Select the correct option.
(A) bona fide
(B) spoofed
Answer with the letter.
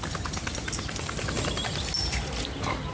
A